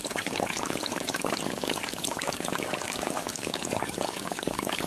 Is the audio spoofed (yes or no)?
yes